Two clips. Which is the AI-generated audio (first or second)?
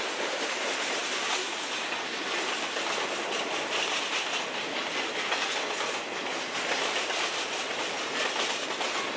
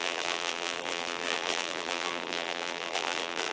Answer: second